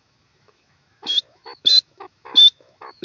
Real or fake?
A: fake